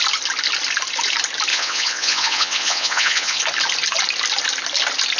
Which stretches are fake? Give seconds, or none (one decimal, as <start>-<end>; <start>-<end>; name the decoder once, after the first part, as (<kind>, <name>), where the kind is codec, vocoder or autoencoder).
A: 1.5-3.4 (vocoder, WaveNeXt)